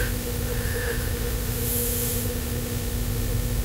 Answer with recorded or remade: remade